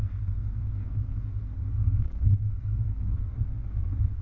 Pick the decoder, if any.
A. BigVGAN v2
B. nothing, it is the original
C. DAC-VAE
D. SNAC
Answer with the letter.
D